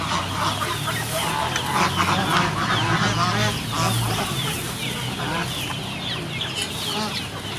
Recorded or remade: recorded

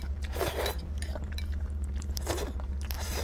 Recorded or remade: remade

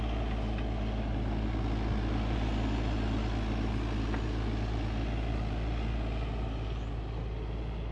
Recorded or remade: recorded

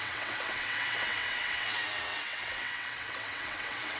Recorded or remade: remade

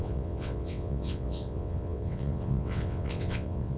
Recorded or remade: remade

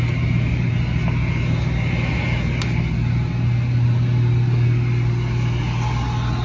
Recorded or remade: recorded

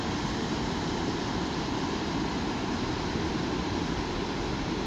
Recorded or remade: recorded